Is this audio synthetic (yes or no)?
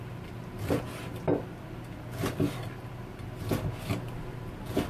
no